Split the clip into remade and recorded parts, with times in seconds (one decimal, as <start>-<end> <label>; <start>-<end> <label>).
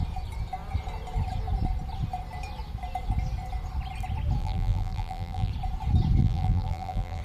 0.0-4.4 recorded; 4.4-5.5 remade; 5.5-6.2 recorded; 6.2-7.2 remade